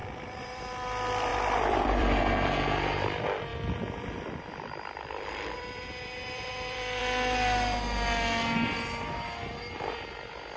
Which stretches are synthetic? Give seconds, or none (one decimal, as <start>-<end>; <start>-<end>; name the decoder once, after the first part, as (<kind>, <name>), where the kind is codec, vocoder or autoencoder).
0.0-0.6 (vocoder, BigVGAN v2); 1.3-2.2; 3.5-7.0